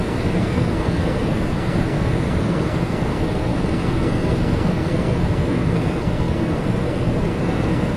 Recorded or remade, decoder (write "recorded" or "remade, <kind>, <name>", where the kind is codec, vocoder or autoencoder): remade, codec, SNAC